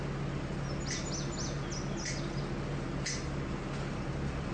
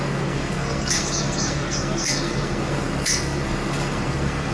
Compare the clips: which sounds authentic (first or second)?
first